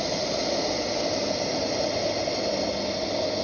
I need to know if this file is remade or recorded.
recorded